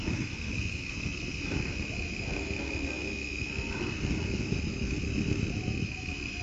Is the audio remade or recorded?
remade